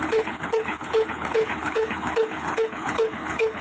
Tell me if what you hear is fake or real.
fake